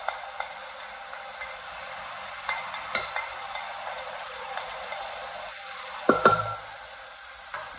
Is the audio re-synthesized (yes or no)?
no